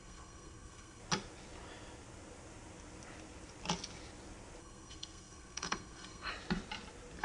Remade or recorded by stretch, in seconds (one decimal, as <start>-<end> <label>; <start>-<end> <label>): 0.0-1.0 remade; 1.0-4.6 recorded; 4.6-6.3 remade; 6.3-7.2 recorded